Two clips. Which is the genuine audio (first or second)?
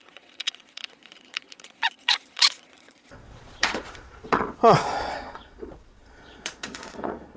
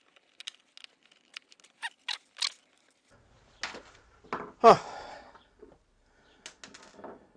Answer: second